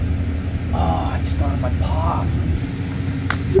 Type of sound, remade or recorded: recorded